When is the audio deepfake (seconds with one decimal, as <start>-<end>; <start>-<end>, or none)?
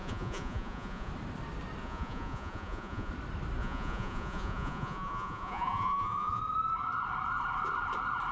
0.0-1.1; 1.8-3.1; 3.6-6.4